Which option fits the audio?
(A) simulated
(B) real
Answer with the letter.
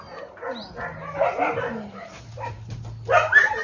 B